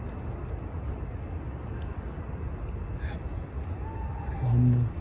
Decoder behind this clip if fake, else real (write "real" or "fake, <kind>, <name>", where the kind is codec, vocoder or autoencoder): real